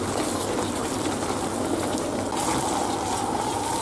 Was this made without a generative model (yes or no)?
yes